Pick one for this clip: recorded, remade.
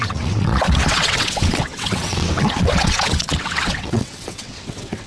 remade